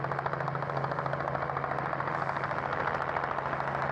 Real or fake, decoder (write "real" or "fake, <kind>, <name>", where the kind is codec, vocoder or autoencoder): real